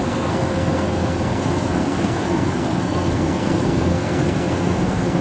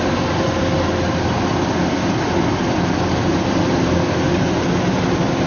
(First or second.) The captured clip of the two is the second